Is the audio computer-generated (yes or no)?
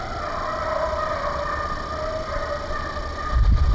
no